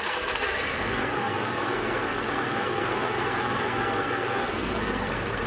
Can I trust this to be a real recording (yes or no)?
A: no